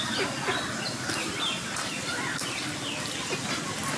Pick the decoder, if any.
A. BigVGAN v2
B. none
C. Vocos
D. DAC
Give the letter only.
B